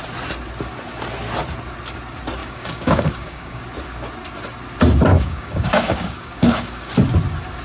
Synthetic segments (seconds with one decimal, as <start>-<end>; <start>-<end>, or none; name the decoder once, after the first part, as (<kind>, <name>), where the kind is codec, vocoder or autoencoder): 2.4-3.6 (codec, DAC); 5.1-6.9